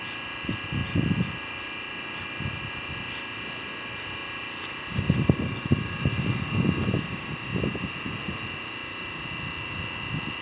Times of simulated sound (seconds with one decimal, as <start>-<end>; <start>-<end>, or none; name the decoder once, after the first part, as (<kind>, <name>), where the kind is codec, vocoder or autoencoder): none